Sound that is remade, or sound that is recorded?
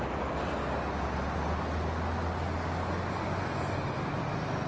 recorded